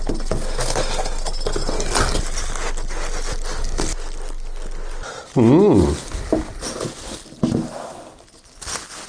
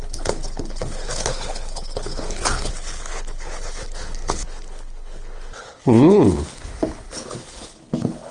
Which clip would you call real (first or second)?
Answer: first